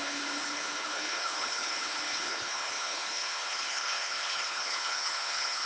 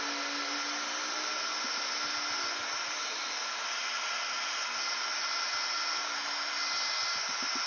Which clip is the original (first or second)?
second